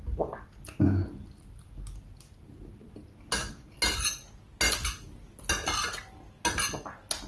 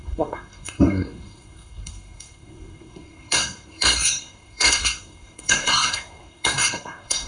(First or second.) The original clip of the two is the first